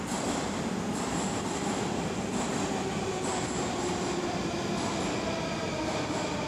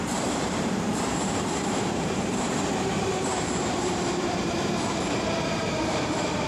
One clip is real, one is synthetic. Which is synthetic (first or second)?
second